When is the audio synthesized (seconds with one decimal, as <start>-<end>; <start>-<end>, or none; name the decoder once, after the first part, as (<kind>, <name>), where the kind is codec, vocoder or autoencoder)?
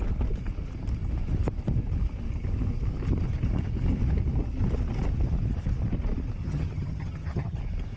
6.4-7.6 (vocoder, HiFi-GAN)